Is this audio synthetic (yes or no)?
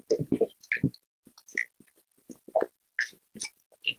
no